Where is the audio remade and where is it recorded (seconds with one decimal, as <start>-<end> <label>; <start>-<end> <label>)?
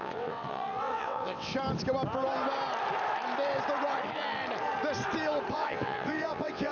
0.0-1.5 remade; 1.5-5.5 recorded; 5.5-6.7 remade